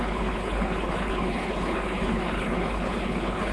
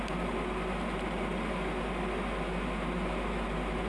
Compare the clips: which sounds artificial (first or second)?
first